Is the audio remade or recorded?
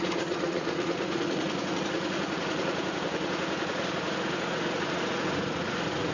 remade